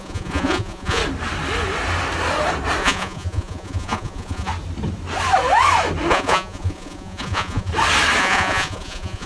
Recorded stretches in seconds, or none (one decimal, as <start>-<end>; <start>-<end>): 1.0-2.8; 4.5-6.1; 7.7-8.2